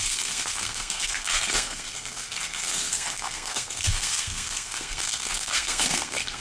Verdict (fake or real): fake